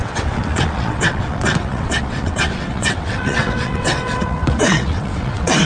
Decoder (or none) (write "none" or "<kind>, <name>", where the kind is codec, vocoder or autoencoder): vocoder, WaveNeXt